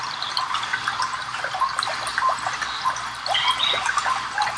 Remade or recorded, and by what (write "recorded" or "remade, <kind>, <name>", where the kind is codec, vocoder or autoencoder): recorded